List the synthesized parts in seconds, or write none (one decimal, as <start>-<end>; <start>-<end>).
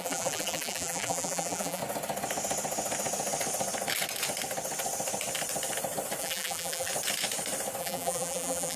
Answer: 0.0-1.8; 6.2-6.9; 7.8-8.8